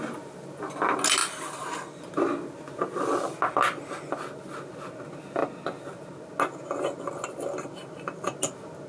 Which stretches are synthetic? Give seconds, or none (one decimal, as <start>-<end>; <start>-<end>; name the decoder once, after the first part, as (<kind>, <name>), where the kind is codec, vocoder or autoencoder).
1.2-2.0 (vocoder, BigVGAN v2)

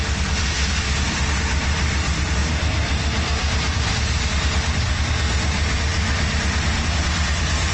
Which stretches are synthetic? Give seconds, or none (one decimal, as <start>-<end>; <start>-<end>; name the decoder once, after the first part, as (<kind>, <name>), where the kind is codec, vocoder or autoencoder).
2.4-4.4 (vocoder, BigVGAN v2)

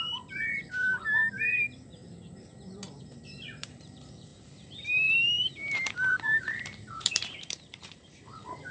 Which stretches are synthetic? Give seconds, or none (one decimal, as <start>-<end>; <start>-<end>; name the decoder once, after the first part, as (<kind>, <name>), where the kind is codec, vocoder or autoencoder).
0.0-2.0 (vocoder, BigVGAN v2); 3.0-8.7